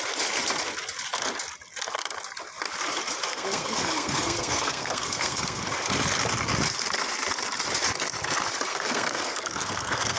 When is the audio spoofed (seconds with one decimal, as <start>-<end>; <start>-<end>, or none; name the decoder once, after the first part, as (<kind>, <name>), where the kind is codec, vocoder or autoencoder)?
3.3-5.6 (codec, SNAC); 8.7-10.2